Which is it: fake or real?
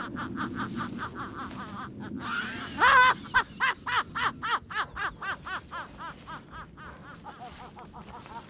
real